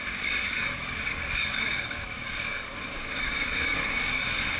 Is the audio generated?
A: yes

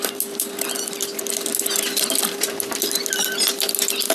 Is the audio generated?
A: no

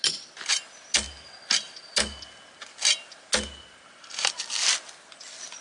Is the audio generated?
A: no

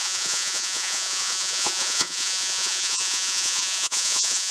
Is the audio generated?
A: yes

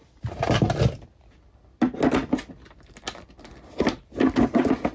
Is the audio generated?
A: no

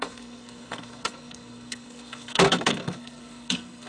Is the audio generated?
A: yes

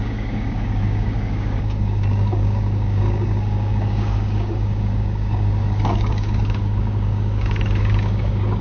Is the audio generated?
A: yes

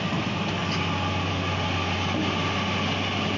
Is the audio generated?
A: no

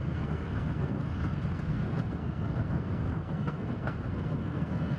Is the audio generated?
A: yes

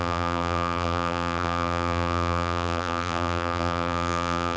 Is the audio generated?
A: yes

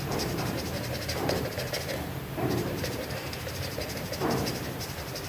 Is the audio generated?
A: yes